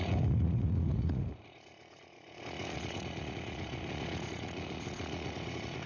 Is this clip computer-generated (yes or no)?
yes